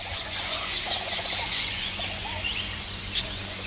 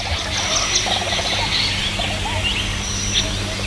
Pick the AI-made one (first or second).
first